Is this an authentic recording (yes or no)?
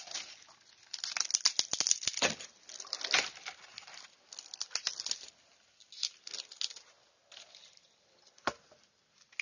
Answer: yes